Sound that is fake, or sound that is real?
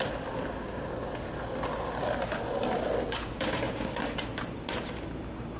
real